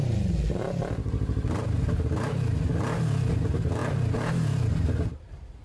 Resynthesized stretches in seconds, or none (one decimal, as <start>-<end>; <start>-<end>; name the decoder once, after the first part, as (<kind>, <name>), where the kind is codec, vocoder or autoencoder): none